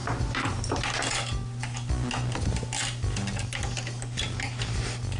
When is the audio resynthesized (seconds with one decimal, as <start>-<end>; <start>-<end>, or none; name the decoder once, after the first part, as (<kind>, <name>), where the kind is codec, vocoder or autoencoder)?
0.0-0.8 (vocoder, BigVGAN v2)